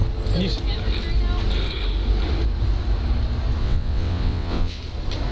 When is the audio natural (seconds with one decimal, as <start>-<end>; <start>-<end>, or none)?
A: 0.0-3.6; 4.8-5.3